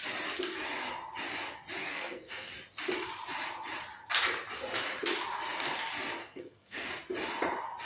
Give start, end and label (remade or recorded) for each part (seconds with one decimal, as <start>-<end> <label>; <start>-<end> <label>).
0.0-1.8 recorded; 1.8-2.5 remade; 2.5-6.2 recorded; 6.2-6.9 remade; 6.9-7.9 recorded